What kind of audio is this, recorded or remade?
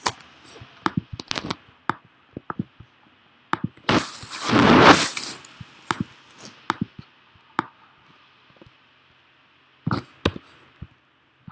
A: recorded